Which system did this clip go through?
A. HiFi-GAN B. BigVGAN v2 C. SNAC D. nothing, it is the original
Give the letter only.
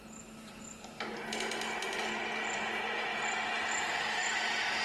D